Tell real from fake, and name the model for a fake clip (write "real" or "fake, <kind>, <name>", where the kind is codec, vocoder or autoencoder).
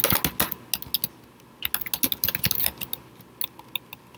real